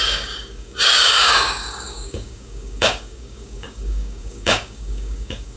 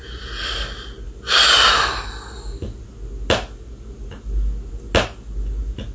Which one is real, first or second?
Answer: second